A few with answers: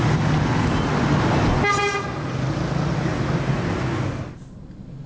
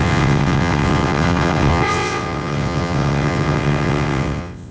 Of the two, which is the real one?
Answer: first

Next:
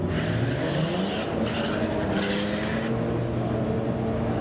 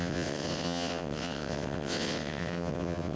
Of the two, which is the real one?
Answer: first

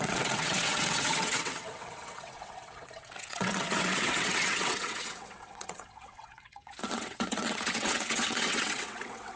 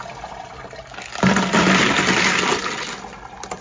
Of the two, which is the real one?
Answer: second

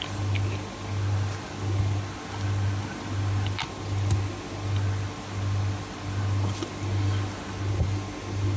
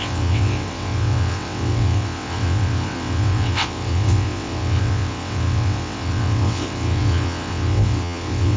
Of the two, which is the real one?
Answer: first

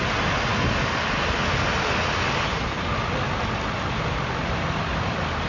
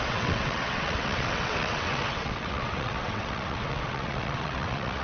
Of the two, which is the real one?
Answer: first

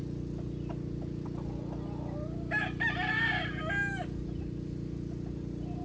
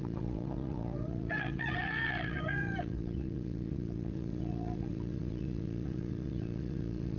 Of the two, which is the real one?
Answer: first